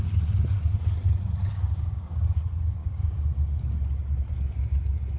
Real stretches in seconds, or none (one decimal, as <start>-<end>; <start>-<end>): 0.0-1.5; 2.4-2.8; 3.3-5.2